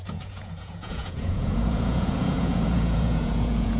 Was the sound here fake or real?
fake